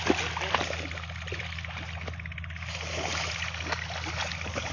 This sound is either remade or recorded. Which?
recorded